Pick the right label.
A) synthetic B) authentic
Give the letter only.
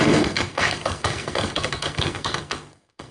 A